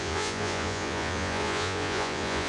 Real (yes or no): no